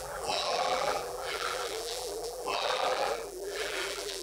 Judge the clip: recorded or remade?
remade